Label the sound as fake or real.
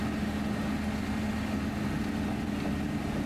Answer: real